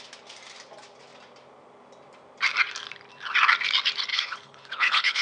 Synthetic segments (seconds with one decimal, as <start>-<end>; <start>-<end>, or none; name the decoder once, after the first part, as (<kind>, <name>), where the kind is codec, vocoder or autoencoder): 4.1-5.2 (codec, HILCodec)

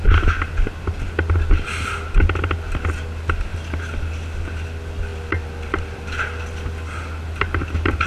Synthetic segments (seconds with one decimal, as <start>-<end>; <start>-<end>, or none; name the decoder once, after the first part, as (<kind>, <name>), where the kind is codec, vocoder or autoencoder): none

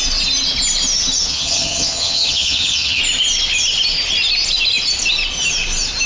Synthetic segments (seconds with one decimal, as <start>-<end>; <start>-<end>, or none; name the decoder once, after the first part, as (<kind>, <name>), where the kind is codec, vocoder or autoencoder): 1.3-3.0 (vocoder, HiFi-GAN)

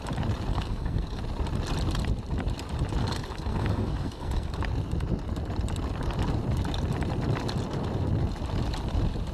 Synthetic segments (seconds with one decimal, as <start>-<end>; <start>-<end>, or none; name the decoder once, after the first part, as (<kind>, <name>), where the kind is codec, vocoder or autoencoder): 0.5-1.2 (codec, SNAC); 3.0-4.6

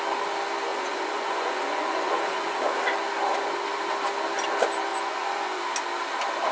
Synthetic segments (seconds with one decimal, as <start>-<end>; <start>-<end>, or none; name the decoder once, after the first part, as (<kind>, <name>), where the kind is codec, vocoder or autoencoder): 0.7-2.8 (vocoder, Vocos); 4.9-5.6

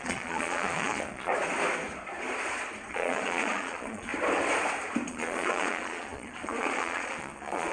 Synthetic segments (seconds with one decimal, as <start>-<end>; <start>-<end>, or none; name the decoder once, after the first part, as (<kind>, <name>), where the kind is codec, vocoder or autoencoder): 0.0-1.3 (vocoder, Vocos); 2.9-4.1; 5.1-7.7

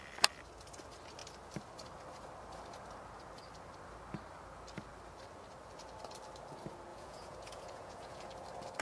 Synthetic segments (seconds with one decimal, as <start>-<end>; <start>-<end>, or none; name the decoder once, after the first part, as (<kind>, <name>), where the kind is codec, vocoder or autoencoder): 6.9-8.3 (vocoder, Vocos)

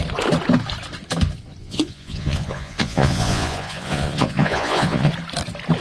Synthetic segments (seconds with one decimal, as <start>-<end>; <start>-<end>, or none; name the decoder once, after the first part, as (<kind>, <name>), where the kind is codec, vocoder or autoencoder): 1.6-5.1 (vocoder, Vocos)